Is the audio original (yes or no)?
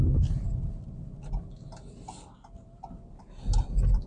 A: yes